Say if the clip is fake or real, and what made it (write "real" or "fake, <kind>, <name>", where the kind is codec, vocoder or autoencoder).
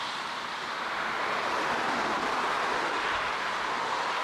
real